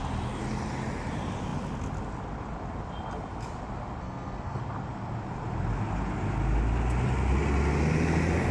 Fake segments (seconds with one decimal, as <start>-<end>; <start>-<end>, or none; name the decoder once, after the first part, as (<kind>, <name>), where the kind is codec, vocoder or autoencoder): 4.0-4.6 (codec, SNAC)